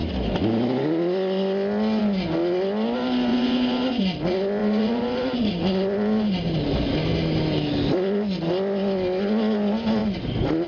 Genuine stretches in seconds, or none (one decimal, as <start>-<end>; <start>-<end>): 0.0-3.3; 4.0-4.6; 5.6-10.7